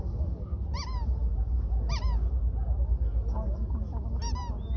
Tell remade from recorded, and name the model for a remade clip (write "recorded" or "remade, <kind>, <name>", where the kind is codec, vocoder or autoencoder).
recorded